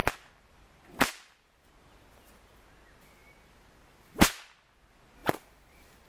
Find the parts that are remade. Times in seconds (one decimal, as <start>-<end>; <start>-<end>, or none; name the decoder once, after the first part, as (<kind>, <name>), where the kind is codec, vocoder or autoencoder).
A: 0.0-1.7 (vocoder, BigVGAN v2); 5.2-6.1